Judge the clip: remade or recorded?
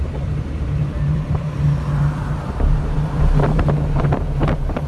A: remade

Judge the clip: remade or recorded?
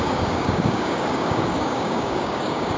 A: remade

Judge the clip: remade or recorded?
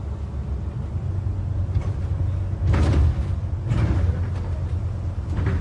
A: recorded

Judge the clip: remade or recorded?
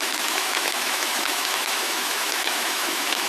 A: remade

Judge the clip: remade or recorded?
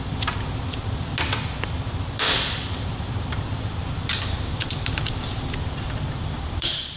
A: remade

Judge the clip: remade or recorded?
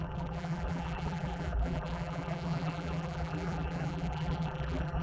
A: remade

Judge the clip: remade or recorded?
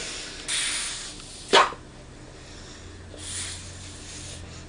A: recorded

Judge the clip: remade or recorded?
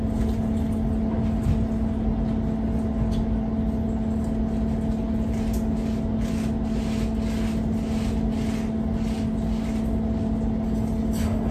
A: recorded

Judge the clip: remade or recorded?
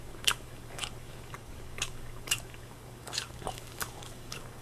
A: remade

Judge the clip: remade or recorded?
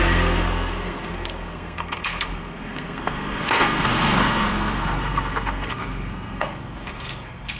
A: remade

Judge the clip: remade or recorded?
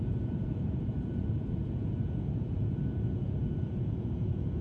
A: remade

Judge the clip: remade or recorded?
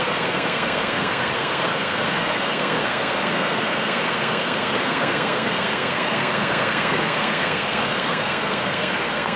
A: remade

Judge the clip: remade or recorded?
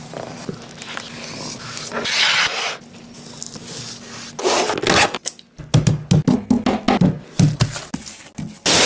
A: recorded